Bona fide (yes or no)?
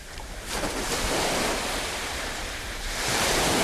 no